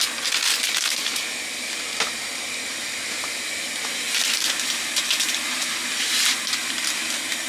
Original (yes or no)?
yes